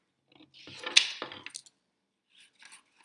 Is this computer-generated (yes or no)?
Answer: no